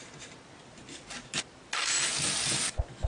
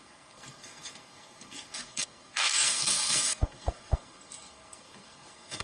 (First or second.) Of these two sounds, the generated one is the second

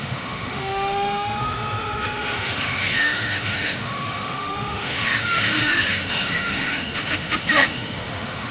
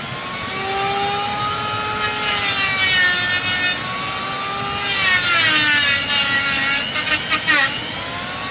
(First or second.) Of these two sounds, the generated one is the first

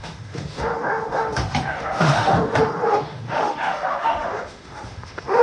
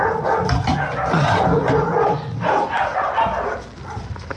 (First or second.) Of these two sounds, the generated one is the first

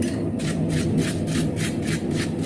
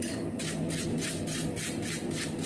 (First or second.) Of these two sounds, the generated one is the first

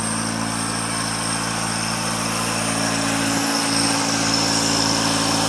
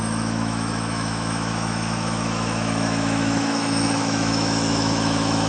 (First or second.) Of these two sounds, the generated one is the second